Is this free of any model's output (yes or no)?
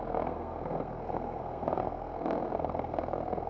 no